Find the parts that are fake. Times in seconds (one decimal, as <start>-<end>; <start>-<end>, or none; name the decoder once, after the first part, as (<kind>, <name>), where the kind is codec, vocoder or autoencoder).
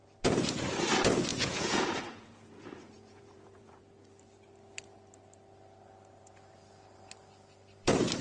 1.3-3.8 (vocoder, Vocos)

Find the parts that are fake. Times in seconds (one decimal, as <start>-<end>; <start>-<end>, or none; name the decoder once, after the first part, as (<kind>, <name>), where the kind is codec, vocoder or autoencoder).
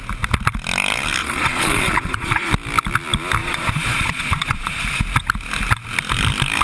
1.2-2.5 (vocoder, Vocos); 3.4-4.8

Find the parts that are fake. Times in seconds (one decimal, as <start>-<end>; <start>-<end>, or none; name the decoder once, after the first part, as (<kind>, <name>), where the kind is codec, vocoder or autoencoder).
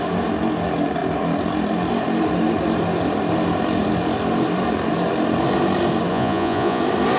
6.1-6.8 (vocoder, Vocos)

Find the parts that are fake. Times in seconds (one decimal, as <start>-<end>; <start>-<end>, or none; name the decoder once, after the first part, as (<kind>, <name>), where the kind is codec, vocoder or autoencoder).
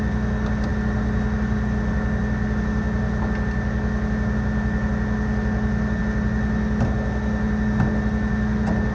none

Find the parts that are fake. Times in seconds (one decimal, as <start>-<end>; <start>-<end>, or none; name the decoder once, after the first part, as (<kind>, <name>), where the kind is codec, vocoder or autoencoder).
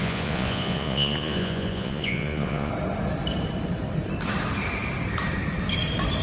0.0-2.7 (vocoder, Vocos)